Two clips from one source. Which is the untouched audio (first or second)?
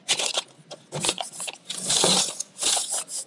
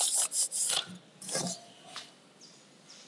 second